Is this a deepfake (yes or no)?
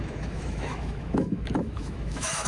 yes